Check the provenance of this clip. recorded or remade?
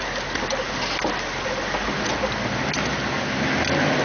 recorded